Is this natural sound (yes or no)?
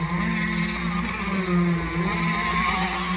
yes